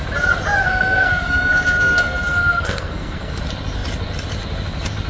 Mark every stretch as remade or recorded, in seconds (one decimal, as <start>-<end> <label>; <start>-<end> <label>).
0.0-0.6 recorded; 0.6-3.4 remade; 3.4-5.1 recorded